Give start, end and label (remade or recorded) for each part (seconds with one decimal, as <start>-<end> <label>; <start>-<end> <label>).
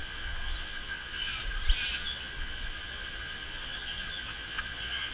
0.0-1.4 remade; 1.4-1.9 recorded; 1.9-5.1 remade